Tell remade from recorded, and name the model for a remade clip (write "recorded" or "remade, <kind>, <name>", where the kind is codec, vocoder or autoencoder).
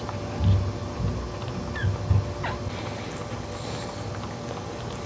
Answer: recorded